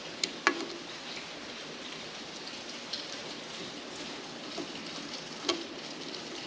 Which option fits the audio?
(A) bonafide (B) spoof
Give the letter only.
A